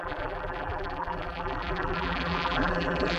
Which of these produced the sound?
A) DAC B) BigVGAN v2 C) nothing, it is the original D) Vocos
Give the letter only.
B